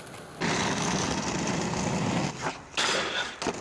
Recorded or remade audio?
recorded